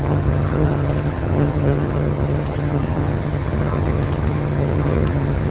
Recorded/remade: remade